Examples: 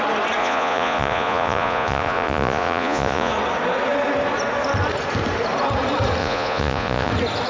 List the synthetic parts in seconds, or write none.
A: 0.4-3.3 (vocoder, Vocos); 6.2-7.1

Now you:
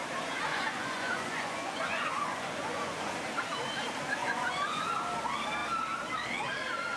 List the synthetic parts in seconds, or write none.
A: 0.5-3.2 (vocoder, Vocos); 4.2-4.8

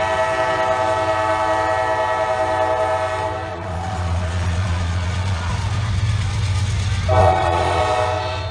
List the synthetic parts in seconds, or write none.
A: 3.5-5.5 (vocoder, Vocos); 7.2-7.8

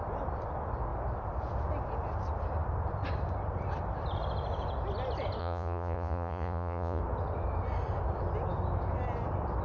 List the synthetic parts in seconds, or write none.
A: 5.4-7.0 (vocoder, Vocos)

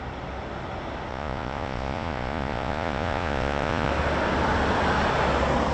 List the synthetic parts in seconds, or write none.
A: 1.1-3.9 (vocoder, Vocos)

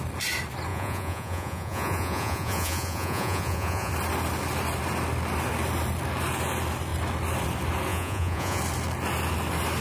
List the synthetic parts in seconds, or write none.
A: 0.7-3.9 (vocoder, Vocos); 7.9-8.6